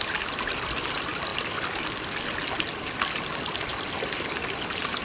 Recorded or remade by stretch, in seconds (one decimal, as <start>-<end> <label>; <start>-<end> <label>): 0.0-5.0 recorded